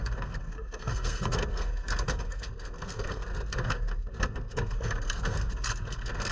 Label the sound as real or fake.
fake